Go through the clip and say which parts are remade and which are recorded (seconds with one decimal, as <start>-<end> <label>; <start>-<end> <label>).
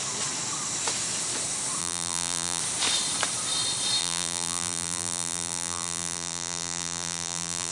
0.0-1.8 recorded; 1.8-2.6 remade; 2.6-4.0 recorded; 4.0-7.7 remade